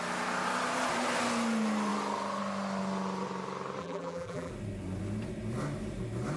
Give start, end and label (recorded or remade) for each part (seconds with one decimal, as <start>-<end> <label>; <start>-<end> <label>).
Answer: 0.0-3.8 recorded; 3.8-4.5 remade; 4.5-6.4 recorded